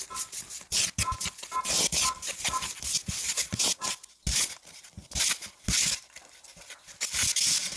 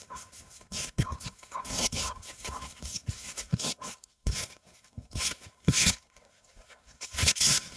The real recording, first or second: first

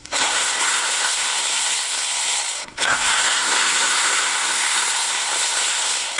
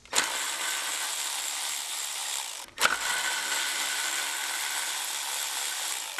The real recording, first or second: second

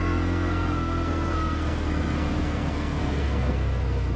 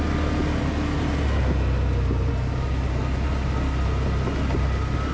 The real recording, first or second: second